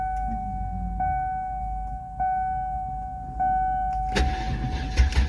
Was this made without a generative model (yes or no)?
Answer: yes